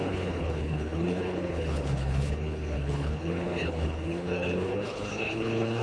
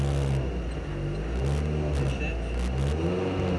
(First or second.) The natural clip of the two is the second